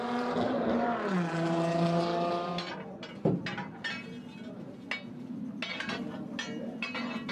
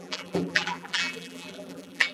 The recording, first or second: first